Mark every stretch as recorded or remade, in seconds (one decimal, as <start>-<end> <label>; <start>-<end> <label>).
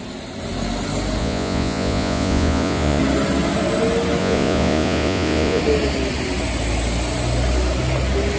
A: 0.0-1.2 recorded; 1.2-3.0 remade; 3.0-4.2 recorded; 4.2-5.6 remade; 5.6-8.4 recorded